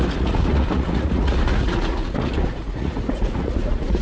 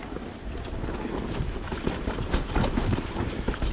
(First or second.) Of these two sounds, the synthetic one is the first